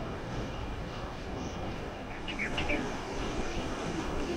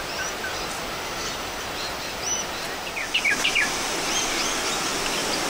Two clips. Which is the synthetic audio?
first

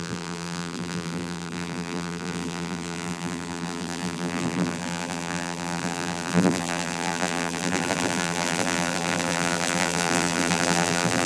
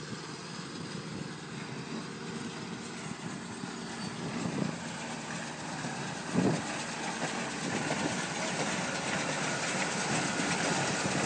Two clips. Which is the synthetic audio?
first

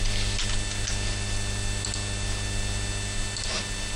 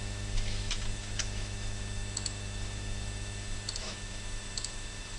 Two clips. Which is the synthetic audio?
second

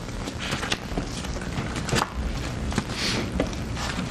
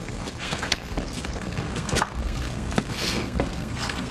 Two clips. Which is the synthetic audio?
second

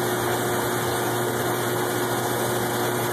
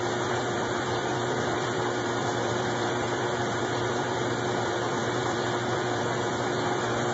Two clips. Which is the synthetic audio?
second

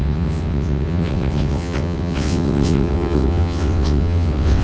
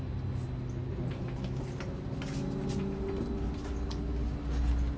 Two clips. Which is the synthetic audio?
first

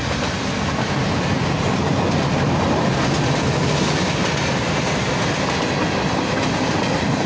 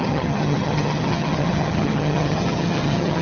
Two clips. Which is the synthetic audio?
second